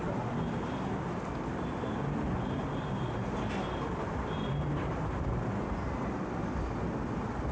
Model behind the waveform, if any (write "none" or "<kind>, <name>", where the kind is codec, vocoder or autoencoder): none